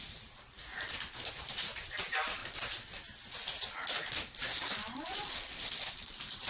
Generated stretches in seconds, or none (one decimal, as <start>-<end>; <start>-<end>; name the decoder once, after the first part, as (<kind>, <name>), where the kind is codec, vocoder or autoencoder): 0.0-0.7 (vocoder, BigVGAN v2); 1.3-2.4; 5.9-6.5